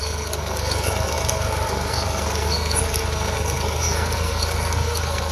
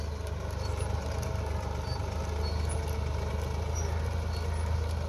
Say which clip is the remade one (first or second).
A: first